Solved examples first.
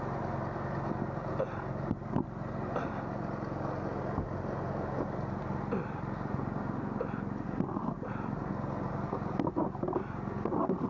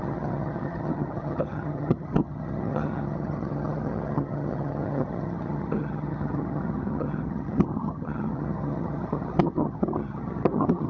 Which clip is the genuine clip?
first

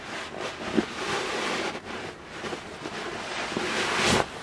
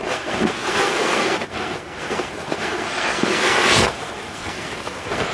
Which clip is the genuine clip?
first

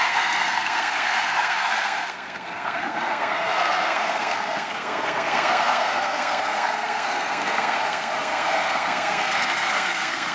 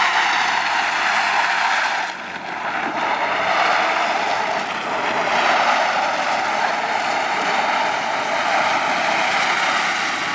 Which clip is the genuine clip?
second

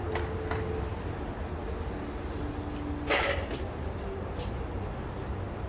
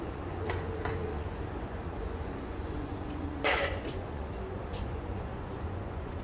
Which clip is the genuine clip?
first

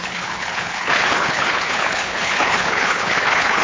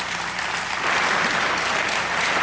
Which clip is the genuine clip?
second